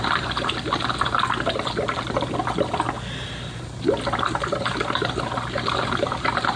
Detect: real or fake real